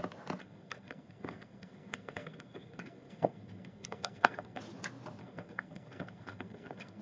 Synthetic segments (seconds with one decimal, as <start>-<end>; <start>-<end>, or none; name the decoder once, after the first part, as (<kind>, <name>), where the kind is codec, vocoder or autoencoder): 0.4-4.6 (codec, SNAC); 5.2-7.0